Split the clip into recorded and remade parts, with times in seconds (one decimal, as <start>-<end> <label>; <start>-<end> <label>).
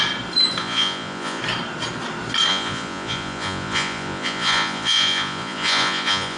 0.0-0.6 recorded; 0.6-1.4 remade; 1.4-2.5 recorded; 2.5-6.4 remade